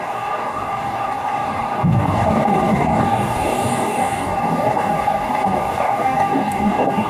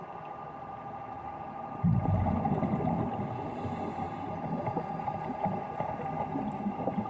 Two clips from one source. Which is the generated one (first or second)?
first